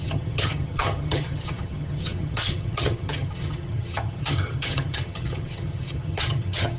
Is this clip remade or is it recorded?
remade